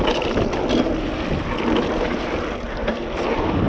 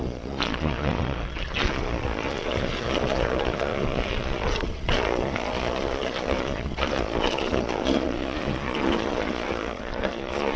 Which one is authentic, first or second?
first